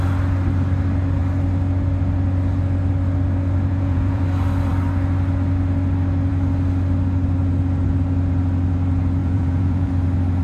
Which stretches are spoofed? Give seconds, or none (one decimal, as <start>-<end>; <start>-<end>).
3.7-4.2; 9.2-9.9